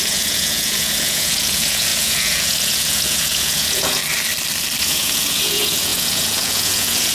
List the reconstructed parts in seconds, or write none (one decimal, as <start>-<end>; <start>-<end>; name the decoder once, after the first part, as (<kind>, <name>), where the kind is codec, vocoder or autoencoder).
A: 0.0-4.0 (vocoder, Vocos); 4.8-7.1